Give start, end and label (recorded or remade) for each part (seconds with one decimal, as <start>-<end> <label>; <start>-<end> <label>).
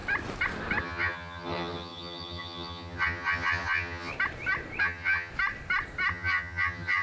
0.0-0.8 recorded; 0.8-4.1 remade; 4.1-4.8 recorded; 4.8-5.3 remade; 5.3-6.1 recorded; 6.1-7.0 remade